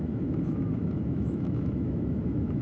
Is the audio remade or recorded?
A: remade